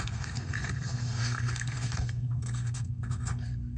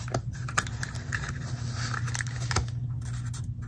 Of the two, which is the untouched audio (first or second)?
second